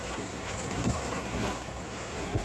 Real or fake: fake